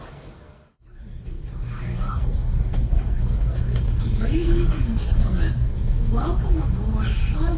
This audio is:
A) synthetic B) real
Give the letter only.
A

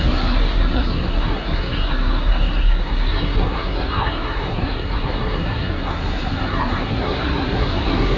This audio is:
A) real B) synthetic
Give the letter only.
B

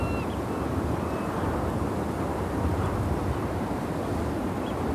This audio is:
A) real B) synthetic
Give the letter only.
A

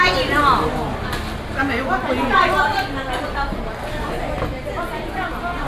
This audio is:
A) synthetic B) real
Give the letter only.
B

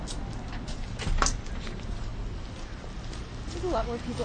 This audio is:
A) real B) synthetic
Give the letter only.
A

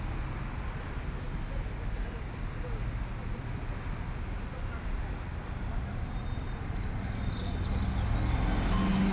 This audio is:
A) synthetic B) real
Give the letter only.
B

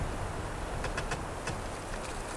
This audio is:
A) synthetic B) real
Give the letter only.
B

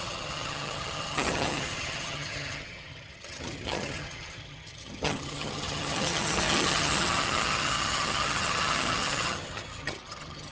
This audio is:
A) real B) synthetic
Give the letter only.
B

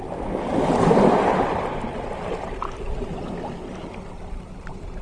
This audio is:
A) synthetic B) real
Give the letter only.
B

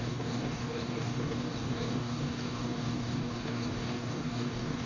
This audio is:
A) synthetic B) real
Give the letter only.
A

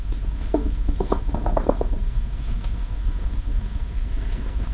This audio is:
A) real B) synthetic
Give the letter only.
B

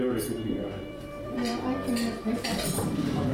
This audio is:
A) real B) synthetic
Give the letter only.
B